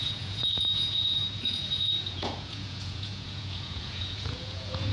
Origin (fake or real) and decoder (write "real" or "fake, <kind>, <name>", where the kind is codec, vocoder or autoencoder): fake, vocoder, Vocos